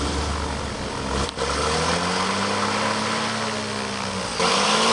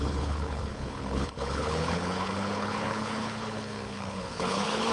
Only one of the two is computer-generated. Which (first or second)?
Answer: second